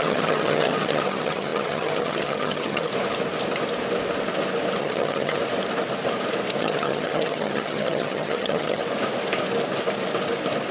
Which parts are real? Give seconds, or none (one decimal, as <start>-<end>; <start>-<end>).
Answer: 2.9-4.8; 5.4-6.6; 8.8-10.7